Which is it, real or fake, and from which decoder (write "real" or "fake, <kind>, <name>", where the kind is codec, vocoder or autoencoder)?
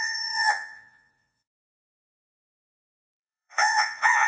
fake, vocoder, Vocos